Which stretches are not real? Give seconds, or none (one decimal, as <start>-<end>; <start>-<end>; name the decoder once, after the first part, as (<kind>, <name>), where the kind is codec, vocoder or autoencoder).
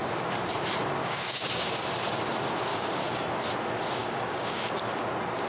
1.0-1.7 (codec, DAC); 2.7-3.2; 4.0-4.8